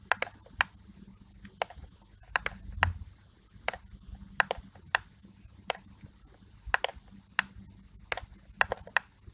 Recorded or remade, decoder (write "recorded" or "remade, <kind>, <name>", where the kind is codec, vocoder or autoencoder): recorded